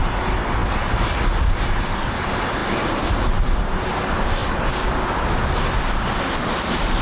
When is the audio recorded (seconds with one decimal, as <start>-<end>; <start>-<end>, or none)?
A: 0.0-7.0